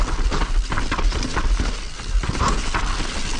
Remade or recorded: recorded